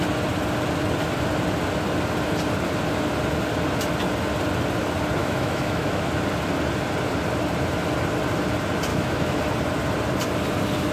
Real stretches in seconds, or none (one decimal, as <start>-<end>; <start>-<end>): 0.0-5.2; 6.1-8.9; 9.4-10.9

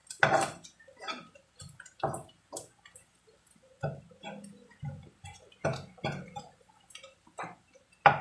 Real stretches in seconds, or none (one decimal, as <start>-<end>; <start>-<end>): 0.0-5.7; 6.9-8.2

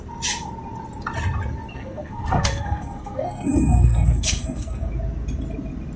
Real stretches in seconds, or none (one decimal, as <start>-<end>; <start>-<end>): 0.0-1.7; 4.9-6.0

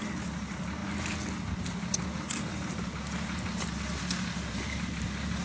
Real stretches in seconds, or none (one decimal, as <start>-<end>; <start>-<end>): 0.0-5.4